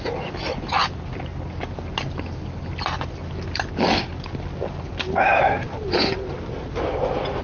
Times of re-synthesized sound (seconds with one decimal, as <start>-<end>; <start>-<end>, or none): 5.3-6.0